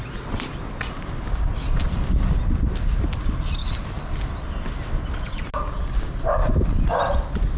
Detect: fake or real real